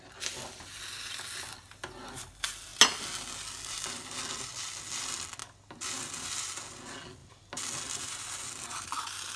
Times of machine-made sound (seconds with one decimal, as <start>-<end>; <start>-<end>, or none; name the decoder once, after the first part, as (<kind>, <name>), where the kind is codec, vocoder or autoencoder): none